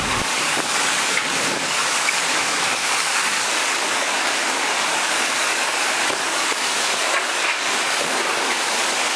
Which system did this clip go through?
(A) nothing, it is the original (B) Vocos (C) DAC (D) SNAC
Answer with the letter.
C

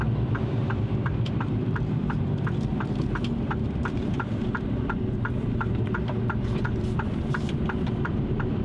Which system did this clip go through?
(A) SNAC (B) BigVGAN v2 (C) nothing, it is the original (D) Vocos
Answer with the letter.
B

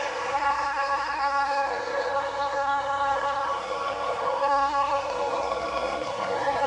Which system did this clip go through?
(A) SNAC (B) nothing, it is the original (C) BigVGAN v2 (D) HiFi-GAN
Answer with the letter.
A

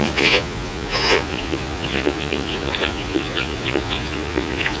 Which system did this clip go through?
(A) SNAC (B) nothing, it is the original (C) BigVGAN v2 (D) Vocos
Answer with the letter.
D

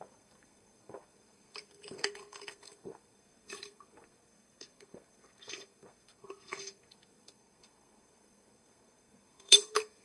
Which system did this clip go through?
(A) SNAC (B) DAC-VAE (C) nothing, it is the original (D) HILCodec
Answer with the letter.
A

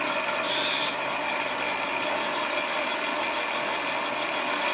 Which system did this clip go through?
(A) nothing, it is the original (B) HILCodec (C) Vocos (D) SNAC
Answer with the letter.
A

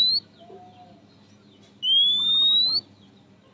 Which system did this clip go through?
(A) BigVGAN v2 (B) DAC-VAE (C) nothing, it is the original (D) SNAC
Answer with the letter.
C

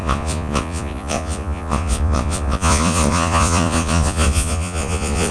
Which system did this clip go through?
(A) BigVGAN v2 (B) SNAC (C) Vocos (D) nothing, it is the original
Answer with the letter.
C